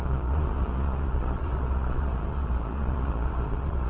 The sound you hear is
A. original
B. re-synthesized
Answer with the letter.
B